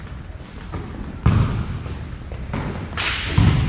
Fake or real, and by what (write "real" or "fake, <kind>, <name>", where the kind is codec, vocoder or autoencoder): real